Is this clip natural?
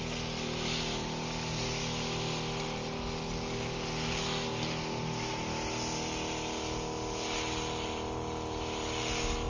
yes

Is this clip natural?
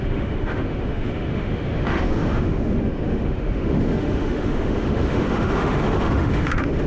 no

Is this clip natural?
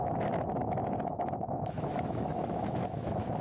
no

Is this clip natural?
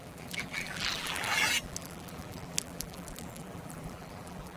no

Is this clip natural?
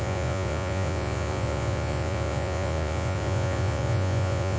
no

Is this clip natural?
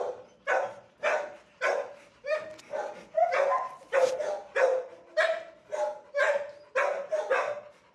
yes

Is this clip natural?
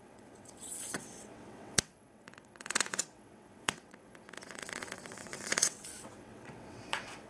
no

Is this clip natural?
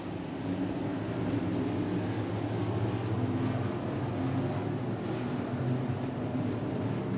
yes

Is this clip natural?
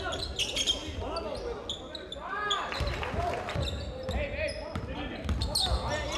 yes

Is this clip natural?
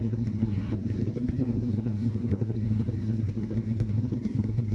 no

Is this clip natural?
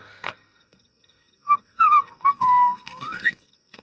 no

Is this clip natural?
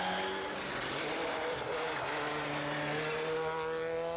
yes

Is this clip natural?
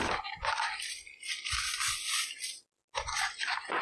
yes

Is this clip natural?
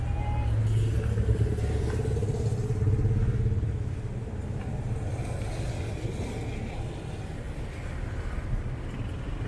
yes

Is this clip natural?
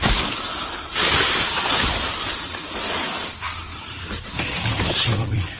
no